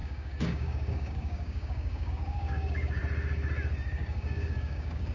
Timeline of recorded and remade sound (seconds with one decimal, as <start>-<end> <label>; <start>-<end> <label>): 0.0-3.0 remade; 3.0-3.9 recorded; 3.9-5.1 remade